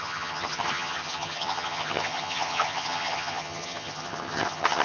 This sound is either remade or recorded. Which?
remade